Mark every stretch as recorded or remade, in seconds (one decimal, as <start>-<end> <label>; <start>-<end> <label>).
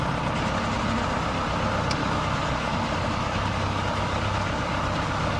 0.0-2.0 recorded; 2.0-5.4 remade